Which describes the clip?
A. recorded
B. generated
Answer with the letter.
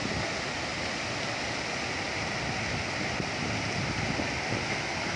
A